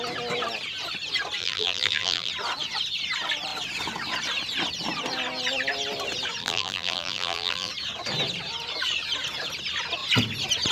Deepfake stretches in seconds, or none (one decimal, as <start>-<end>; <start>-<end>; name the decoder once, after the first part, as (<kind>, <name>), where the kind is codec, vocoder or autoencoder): 1.4-2.3 (vocoder, BigVGAN v2); 6.4-7.7